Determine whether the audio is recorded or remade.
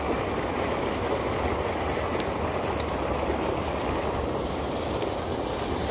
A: recorded